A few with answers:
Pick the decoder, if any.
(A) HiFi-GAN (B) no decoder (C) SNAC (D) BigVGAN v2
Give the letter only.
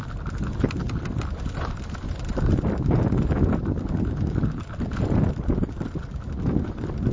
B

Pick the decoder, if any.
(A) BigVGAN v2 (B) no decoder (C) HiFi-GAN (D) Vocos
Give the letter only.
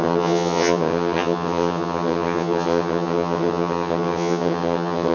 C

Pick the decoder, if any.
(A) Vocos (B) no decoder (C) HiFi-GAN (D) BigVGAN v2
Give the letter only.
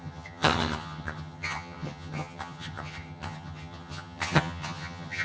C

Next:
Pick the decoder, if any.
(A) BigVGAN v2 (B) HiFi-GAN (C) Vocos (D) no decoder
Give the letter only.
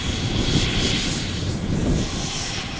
D